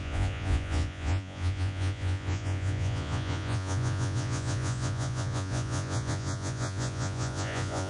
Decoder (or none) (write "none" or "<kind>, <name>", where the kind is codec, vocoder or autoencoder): vocoder, Vocos